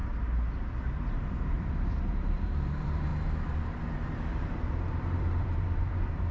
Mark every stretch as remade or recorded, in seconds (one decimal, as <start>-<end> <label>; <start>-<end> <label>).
0.0-0.8 recorded; 0.8-3.1 remade; 3.1-4.3 recorded; 4.3-6.3 remade